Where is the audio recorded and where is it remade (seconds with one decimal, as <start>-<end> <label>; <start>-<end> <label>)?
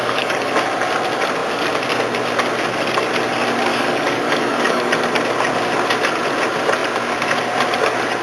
0.0-0.5 remade; 0.5-3.7 recorded; 3.7-4.9 remade; 4.9-8.2 recorded